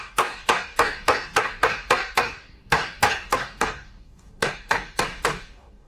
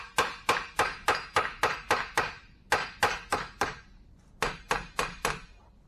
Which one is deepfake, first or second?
first